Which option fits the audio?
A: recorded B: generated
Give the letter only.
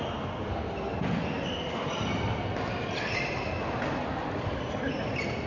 A